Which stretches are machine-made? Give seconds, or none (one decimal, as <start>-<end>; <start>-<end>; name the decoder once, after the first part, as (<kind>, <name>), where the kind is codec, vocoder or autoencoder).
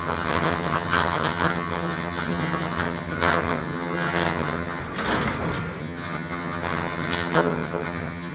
0.0-4.8 (vocoder, HiFi-GAN); 5.8-8.3